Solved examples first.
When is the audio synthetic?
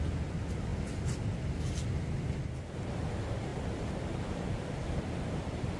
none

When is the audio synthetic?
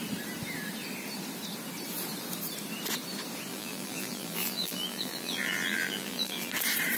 3.5-6.5 (vocoder, BigVGAN v2)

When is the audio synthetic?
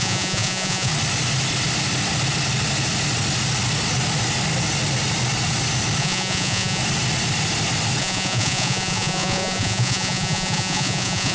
0.0-0.9 (vocoder, Vocos); 6.0-6.8; 8.0-11.3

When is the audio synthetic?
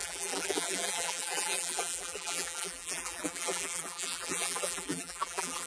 0.0-5.7 (vocoder, BigVGAN v2)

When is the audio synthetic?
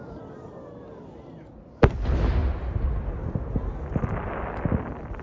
0.0-2.4 (vocoder, BigVGAN v2); 3.8-5.2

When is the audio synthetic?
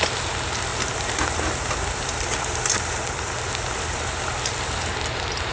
0.7-4.0 (vocoder, BigVGAN v2)